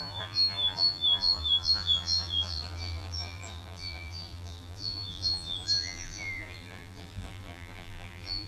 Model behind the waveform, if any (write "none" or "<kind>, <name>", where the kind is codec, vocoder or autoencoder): vocoder, BigVGAN v2